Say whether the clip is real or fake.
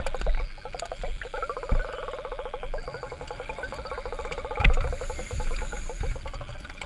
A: real